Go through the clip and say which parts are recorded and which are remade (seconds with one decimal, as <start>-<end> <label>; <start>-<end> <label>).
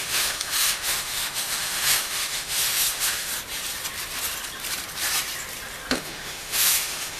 0.0-3.3 remade; 3.3-5.9 recorded; 5.9-7.2 remade